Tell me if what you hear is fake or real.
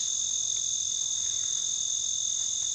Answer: real